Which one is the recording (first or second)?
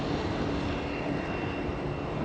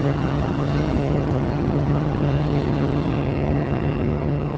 first